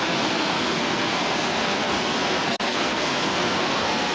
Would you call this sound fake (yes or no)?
yes